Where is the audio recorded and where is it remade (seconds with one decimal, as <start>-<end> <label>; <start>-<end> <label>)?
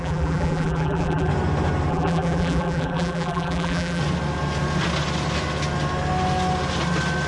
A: 0.0-1.3 remade; 1.3-1.9 recorded; 1.9-4.0 remade; 4.0-7.3 recorded